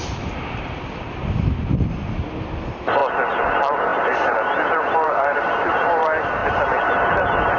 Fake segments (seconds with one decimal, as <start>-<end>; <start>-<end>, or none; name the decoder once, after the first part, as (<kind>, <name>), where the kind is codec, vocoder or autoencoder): 0.0-3.0 (vocoder, BigVGAN v2); 3.5-6.4; 7.1-7.6